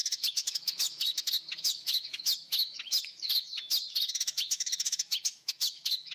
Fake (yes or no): yes